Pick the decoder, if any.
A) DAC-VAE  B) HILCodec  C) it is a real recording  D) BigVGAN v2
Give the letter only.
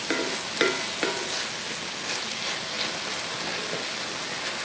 C